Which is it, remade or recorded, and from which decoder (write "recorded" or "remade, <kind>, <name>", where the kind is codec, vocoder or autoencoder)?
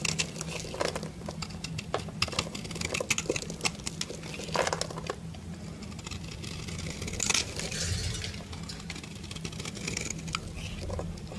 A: recorded